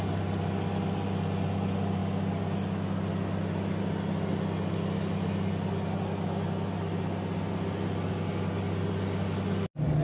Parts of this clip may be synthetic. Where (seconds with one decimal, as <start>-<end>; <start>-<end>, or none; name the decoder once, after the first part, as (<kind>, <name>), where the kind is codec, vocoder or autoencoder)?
none